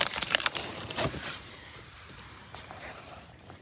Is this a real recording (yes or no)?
no